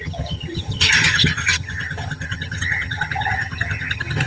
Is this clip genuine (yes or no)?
no